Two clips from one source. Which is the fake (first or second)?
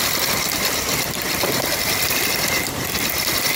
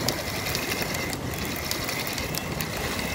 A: first